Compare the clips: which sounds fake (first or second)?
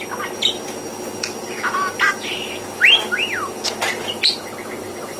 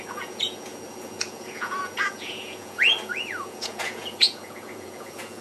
second